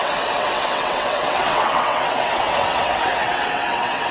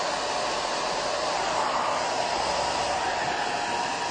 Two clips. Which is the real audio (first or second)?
second